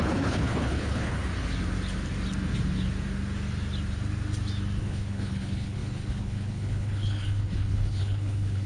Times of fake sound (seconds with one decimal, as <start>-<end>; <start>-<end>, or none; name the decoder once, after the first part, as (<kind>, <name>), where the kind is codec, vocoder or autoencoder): 0.0-1.3 (codec, HILCodec); 4.8-8.7